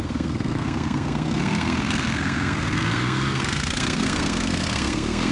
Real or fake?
fake